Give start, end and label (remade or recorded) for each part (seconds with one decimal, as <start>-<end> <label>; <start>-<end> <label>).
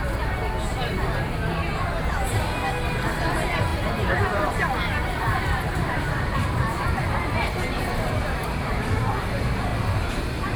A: 0.0-3.7 recorded; 3.7-6.8 remade; 6.8-8.4 recorded; 8.4-9.1 remade; 9.1-10.6 recorded